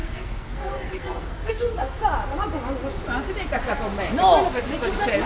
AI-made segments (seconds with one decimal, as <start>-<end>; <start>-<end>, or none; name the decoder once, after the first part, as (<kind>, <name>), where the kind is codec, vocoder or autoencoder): 0.0-2.0 (codec, SNAC)